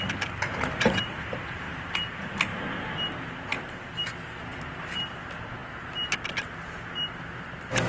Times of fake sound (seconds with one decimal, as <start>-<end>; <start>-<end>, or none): none